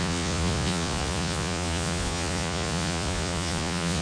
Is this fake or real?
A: fake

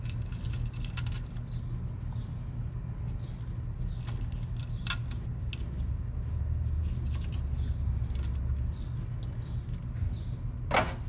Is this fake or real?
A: real